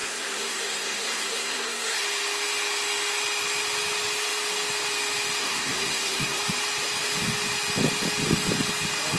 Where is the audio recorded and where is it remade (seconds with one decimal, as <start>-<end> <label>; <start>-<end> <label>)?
0.0-2.0 remade; 2.0-5.4 recorded; 5.4-6.4 remade; 6.4-9.2 recorded